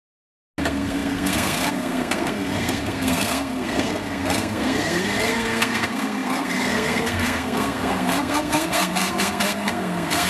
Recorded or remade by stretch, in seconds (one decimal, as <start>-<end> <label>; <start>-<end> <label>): 0.0-0.6 recorded; 0.6-10.3 remade